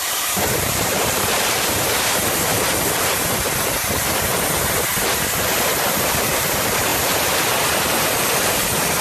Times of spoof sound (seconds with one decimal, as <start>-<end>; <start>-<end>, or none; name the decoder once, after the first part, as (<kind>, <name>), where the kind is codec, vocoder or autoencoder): 0.0-2.5 (vocoder, BigVGAN v2); 6.1-6.9; 8.5-9.0